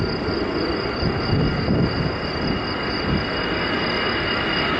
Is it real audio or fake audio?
real